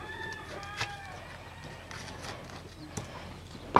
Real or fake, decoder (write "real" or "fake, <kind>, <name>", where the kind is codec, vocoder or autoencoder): real